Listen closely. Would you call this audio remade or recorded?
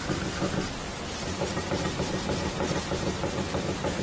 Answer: recorded